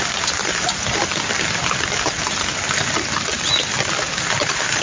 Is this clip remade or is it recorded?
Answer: recorded